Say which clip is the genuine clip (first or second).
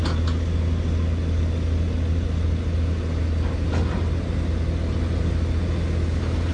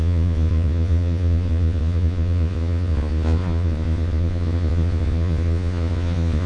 first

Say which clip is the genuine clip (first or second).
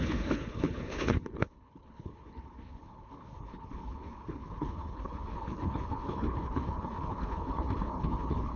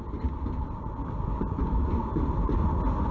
second